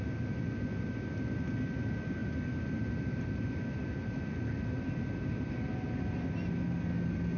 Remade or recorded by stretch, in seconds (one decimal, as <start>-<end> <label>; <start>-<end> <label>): 0.0-7.4 recorded